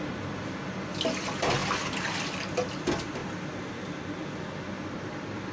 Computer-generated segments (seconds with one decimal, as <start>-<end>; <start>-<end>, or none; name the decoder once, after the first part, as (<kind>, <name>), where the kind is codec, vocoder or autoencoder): none